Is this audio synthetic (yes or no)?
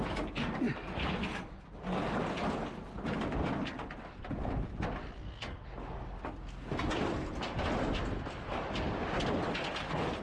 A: no